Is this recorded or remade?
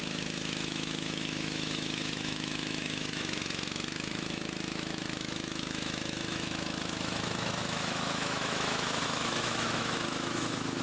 remade